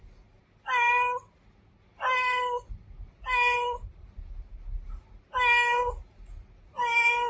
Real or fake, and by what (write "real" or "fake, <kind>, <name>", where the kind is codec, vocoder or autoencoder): real